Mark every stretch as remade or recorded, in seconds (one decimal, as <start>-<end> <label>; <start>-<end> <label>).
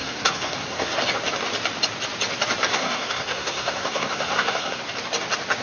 0.0-1.0 remade; 1.0-2.7 recorded; 2.7-4.8 remade; 4.8-5.6 recorded